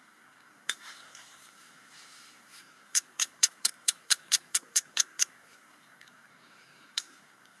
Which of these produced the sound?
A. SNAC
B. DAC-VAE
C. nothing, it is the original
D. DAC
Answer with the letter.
A